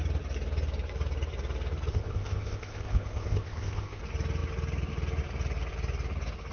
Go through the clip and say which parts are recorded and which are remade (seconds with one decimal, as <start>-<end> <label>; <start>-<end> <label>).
0.0-1.9 recorded; 1.9-4.0 remade; 4.0-6.5 recorded